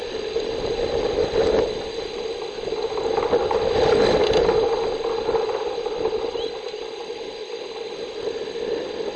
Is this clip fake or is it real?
real